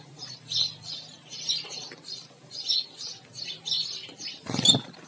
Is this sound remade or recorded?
recorded